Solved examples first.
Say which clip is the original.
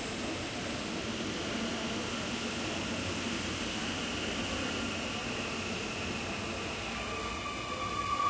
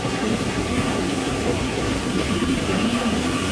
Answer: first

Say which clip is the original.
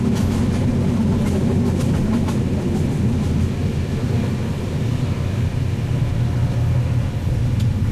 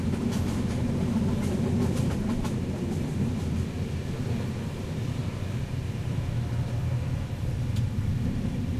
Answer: first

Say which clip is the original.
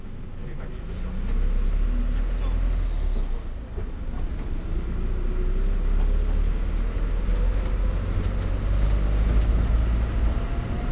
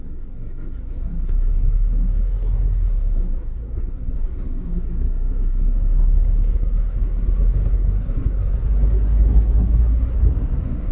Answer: first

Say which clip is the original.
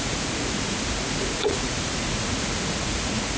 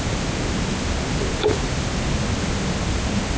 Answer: second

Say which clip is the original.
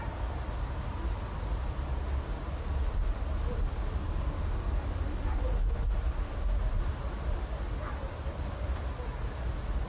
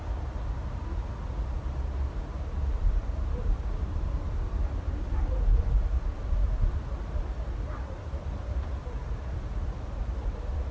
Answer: first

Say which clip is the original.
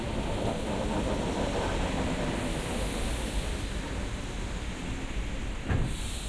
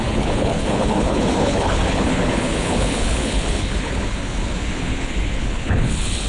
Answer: first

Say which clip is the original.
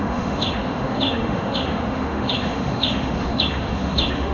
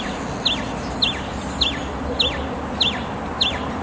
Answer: second